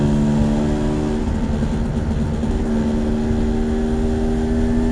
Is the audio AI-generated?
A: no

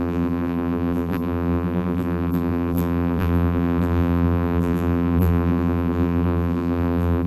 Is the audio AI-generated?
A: yes